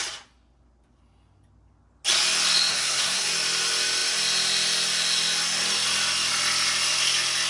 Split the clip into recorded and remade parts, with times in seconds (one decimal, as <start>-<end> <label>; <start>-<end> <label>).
0.0-2.7 recorded; 2.7-3.3 remade; 3.3-7.5 recorded